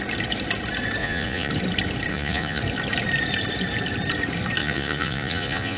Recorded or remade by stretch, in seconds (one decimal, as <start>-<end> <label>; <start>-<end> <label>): 0.0-1.0 recorded; 1.0-1.5 remade; 1.5-2.1 recorded; 2.1-2.6 remade; 2.6-4.6 recorded; 4.6-5.8 remade